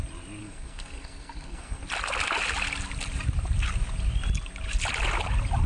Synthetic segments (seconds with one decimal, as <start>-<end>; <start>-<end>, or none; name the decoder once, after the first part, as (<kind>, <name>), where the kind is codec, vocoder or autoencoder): 0.4-1.8 (codec, SNAC)